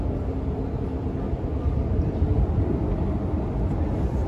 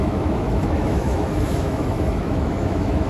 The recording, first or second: first